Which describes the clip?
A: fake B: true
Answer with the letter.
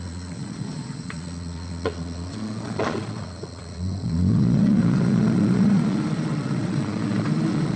A